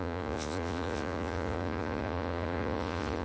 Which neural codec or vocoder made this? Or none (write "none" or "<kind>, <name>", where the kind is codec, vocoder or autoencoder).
vocoder, Vocos